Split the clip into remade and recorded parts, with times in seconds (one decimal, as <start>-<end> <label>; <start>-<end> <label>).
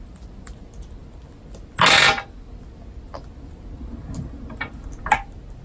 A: 0.0-5.6 recorded